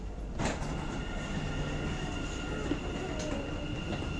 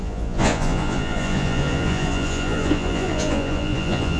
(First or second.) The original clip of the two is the first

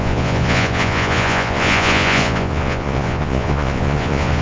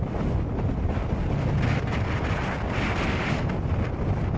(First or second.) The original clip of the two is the second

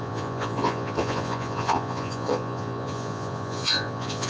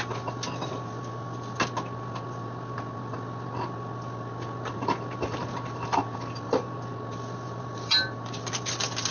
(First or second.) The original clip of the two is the second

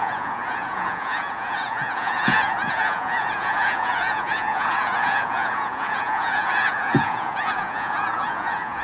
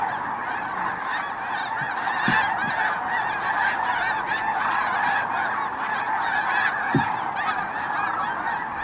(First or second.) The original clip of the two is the second